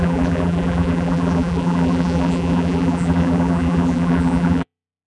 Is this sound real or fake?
fake